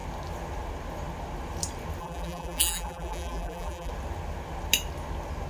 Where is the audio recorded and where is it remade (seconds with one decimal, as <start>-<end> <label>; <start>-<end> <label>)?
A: 0.0-2.0 recorded; 2.0-3.9 remade; 3.9-5.5 recorded